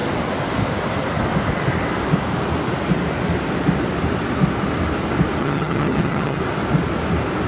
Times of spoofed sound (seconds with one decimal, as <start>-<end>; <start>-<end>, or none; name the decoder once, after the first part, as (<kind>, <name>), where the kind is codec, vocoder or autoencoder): 5.4-6.4 (vocoder, HiFi-GAN)